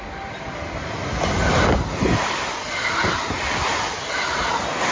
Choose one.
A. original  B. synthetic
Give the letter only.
A